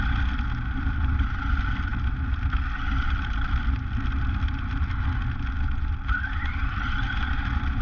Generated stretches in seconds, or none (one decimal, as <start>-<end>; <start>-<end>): none